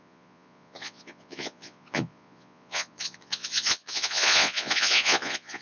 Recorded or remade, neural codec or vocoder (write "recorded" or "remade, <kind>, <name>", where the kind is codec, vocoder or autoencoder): remade, vocoder, Vocos